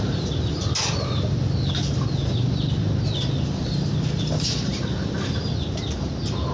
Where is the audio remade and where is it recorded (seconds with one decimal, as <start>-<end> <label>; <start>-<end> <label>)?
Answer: 0.0-6.5 recorded